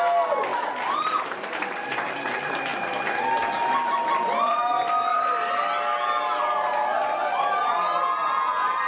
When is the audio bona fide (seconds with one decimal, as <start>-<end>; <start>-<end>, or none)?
0.0-8.9